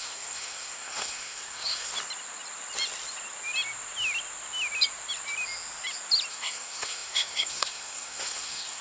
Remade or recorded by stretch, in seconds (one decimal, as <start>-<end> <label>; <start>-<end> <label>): 0.0-1.9 remade; 1.9-6.3 recorded; 6.3-8.8 remade